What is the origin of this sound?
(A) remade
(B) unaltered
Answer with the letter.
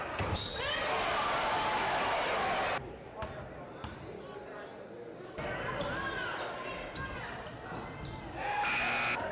B